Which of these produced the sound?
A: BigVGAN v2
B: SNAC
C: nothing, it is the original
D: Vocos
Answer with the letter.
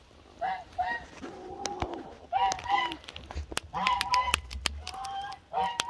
C